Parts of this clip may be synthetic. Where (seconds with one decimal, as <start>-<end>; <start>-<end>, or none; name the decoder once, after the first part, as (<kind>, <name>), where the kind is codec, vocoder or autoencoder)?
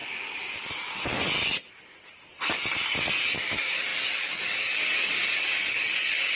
3.3-6.4 (codec, DAC)